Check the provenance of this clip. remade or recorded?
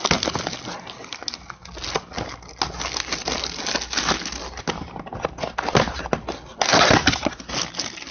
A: recorded